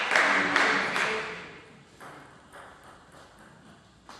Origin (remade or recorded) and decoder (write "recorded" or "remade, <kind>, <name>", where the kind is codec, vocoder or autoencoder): recorded